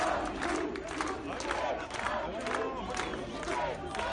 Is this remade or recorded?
recorded